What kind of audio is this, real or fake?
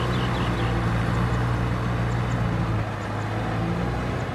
real